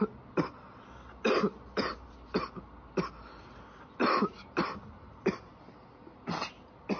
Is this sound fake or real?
real